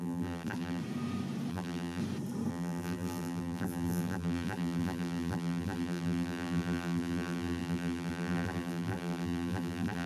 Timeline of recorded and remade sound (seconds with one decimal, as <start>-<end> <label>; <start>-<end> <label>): 0.0-0.8 remade; 0.8-1.5 recorded; 1.5-2.0 remade; 2.0-2.5 recorded; 2.5-10.1 remade